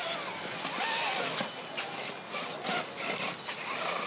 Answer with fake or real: real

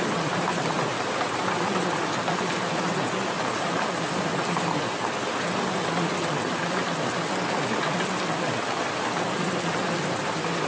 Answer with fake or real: real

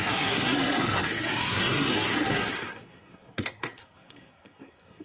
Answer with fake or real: fake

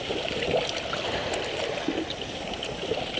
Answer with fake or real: real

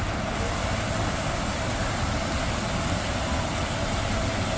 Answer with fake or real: real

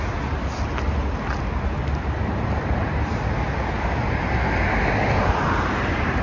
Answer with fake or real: real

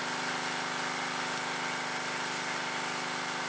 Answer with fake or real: real